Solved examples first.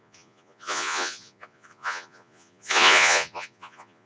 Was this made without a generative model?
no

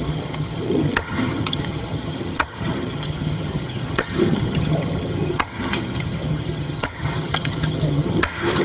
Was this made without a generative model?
no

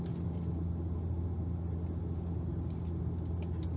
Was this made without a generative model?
yes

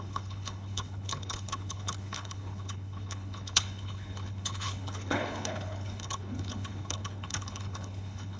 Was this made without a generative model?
no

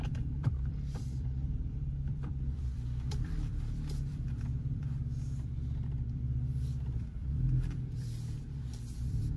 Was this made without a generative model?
no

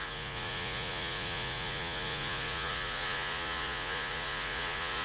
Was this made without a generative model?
no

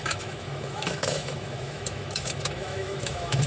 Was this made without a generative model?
no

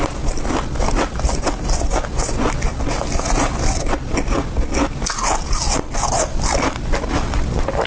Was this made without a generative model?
yes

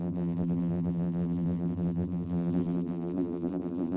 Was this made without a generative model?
no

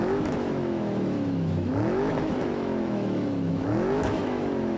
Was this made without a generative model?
no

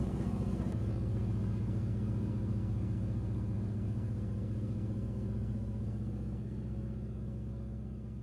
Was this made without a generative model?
no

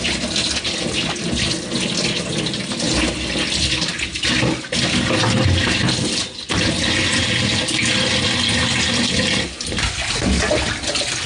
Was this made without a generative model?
yes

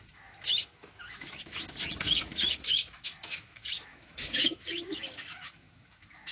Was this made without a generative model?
no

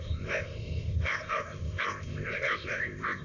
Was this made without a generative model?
no